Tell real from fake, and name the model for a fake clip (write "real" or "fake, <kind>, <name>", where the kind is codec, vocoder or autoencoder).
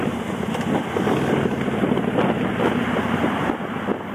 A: real